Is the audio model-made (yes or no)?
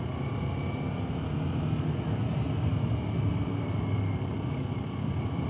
no